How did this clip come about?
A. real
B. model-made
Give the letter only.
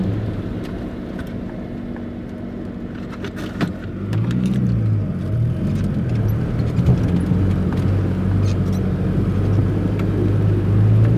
A